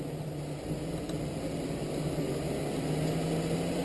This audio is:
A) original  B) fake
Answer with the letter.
A